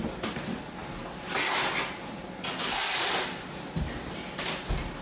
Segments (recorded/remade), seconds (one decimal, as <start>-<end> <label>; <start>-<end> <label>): 0.0-5.0 recorded